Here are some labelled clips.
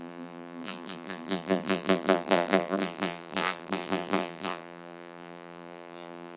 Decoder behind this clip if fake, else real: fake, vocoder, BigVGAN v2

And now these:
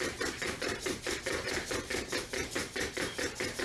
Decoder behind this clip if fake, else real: fake, vocoder, BigVGAN v2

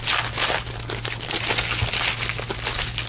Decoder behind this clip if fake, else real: real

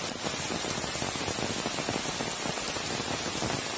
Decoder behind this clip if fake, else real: real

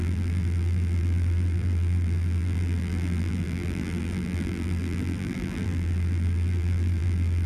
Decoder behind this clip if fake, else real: fake, vocoder, BigVGAN v2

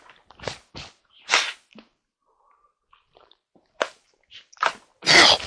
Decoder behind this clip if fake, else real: real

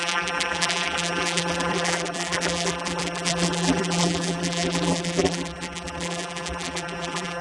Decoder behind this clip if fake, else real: fake, vocoder, BigVGAN v2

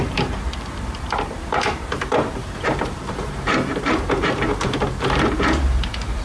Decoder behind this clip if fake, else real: fake, vocoder, BigVGAN v2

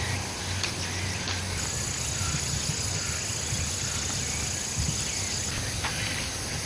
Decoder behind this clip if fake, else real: real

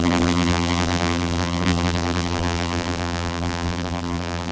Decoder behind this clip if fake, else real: fake, vocoder, BigVGAN v2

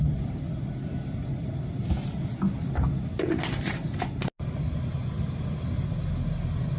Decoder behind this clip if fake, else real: real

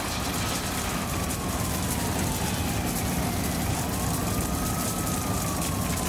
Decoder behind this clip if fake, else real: real